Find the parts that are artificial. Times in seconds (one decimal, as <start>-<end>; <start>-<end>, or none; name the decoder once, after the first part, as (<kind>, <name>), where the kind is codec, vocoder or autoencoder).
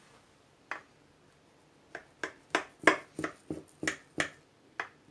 none